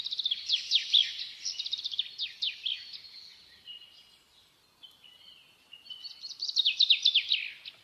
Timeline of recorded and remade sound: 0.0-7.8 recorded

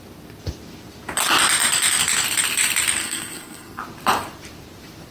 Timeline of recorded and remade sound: 0.0-3.0 recorded; 3.0-3.8 remade; 3.8-5.1 recorded

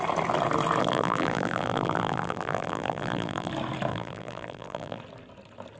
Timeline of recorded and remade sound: 0.0-0.8 recorded; 0.8-3.5 remade; 3.5-3.9 recorded; 3.9-5.0 remade; 5.0-5.8 recorded

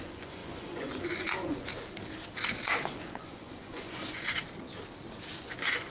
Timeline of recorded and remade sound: 0.0-1.7 remade; 1.7-2.8 recorded; 2.8-4.4 remade; 4.4-5.4 recorded; 5.4-5.9 remade

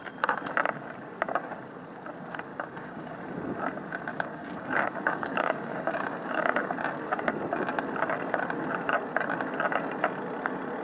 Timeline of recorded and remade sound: 0.0-2.5 recorded; 2.5-3.1 remade; 3.1-4.1 recorded; 4.1-6.7 remade; 6.7-10.8 recorded